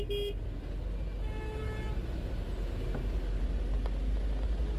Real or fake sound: real